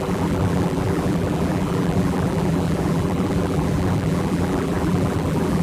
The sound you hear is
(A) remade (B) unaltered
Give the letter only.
A